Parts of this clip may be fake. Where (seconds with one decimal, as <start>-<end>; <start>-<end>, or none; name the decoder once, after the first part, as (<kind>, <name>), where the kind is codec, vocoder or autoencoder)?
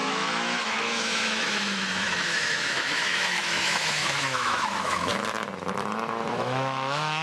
0.0-5.1 (autoencoder, DAC-VAE); 6.3-7.2